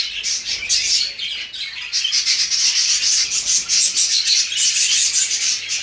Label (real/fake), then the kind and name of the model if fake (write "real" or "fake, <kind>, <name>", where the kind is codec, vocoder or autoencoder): real